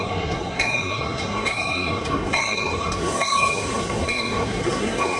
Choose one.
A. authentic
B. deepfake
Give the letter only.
B